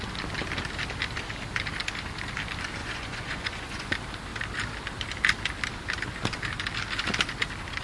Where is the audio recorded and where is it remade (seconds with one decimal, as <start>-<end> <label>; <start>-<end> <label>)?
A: 0.0-2.8 recorded; 2.8-3.9 remade; 3.9-7.8 recorded